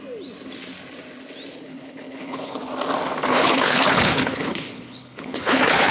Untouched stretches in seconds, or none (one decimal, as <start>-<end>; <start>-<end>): 0.0-1.6; 2.6-3.3